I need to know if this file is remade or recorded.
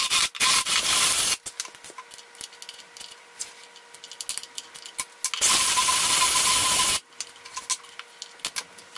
recorded